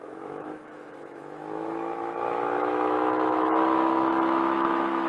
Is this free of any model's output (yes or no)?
no